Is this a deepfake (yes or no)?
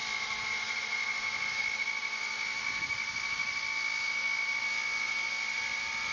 no